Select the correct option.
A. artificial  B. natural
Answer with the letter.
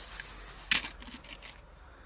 B